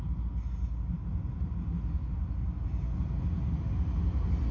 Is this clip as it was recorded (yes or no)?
yes